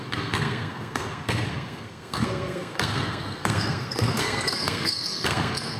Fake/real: fake